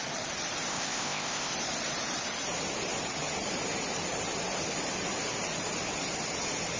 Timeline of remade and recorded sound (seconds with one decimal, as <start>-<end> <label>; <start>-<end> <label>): 0.0-0.7 recorded; 0.7-1.5 remade; 1.5-6.8 recorded